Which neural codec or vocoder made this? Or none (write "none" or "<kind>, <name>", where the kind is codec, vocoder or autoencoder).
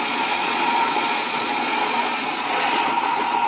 vocoder, Vocos